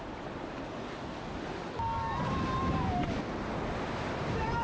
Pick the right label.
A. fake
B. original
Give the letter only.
B